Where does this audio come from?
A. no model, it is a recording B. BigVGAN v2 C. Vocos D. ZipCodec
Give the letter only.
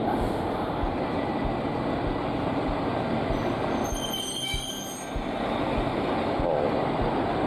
A